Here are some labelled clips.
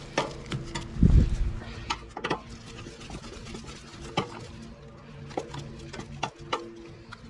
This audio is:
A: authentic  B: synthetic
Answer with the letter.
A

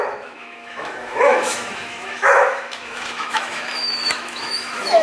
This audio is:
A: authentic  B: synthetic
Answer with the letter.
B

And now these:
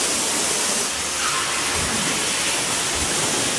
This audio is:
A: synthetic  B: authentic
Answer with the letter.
B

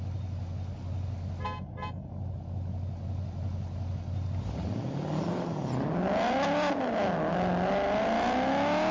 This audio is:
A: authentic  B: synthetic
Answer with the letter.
A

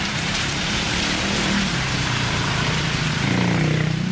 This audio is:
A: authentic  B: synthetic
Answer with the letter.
B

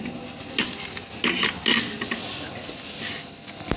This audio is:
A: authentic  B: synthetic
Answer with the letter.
A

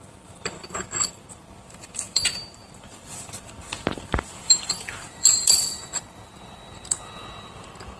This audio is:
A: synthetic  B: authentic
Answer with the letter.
A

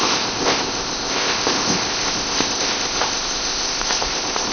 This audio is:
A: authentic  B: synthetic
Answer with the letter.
B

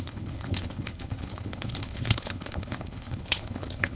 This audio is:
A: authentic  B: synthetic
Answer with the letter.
B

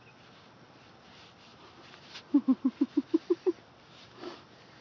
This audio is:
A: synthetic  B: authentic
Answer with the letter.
B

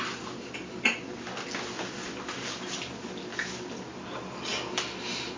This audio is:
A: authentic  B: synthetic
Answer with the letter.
A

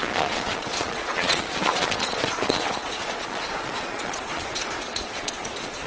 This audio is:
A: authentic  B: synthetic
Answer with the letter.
B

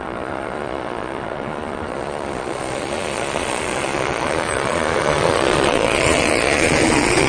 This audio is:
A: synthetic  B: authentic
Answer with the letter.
A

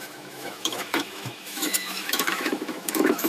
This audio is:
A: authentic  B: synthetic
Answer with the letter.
B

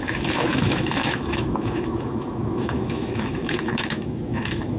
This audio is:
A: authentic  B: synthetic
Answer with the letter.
B